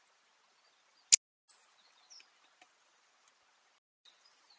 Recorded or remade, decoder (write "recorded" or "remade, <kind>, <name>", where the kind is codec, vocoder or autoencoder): recorded